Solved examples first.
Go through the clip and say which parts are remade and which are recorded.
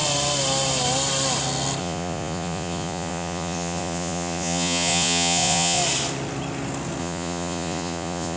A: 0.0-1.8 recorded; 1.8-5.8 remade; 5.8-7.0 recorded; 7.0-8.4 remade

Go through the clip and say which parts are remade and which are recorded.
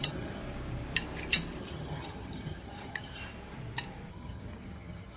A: 0.0-0.4 remade; 0.4-1.6 recorded; 1.6-3.2 remade; 3.2-4.1 recorded; 4.1-5.2 remade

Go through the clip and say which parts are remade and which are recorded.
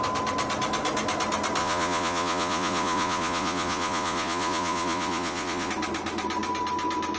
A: 0.0-1.6 recorded; 1.6-5.7 remade; 5.7-7.2 recorded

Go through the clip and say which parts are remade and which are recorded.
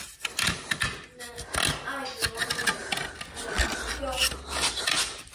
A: 0.0-5.3 recorded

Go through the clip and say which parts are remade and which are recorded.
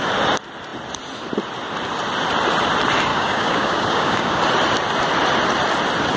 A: 0.0-3.1 recorded; 3.1-4.4 remade; 4.4-6.2 recorded